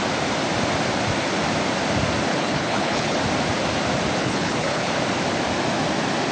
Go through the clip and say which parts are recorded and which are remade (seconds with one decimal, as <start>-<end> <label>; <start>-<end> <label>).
0.0-2.3 recorded; 2.3-3.2 remade; 3.2-4.2 recorded; 4.2-4.9 remade; 4.9-6.3 recorded